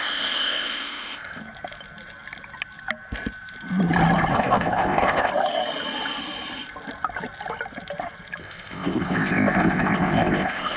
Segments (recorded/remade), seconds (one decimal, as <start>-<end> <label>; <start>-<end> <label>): 0.0-1.4 remade; 1.4-4.3 recorded; 4.3-5.3 remade; 5.3-8.4 recorded; 8.4-10.8 remade